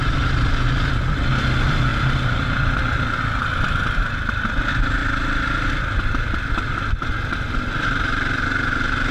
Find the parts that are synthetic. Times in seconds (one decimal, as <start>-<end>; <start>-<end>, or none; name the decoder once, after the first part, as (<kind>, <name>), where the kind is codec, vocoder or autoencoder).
5.0-7.1 (vocoder, BigVGAN v2)